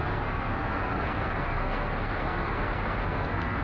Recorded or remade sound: remade